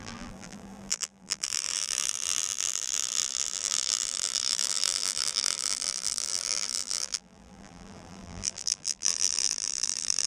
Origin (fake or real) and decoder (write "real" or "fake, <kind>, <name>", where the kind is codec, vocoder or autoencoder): fake, vocoder, BigVGAN v2